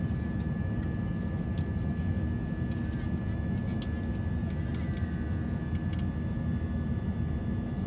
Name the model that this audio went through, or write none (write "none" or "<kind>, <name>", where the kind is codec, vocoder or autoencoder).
none